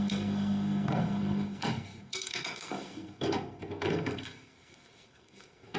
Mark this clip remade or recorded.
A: remade